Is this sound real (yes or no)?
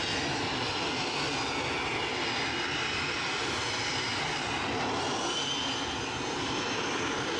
yes